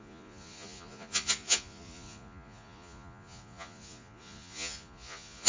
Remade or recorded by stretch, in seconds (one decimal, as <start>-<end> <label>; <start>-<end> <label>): 0.0-5.5 remade